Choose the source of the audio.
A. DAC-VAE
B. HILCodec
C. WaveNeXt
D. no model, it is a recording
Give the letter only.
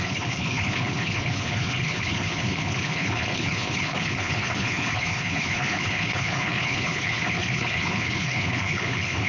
B